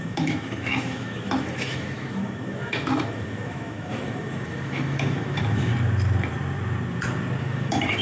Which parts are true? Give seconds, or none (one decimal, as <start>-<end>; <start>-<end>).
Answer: 5.7-7.4